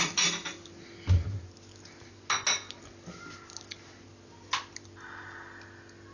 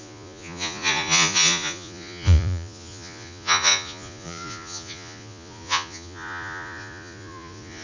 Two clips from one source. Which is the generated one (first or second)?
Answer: second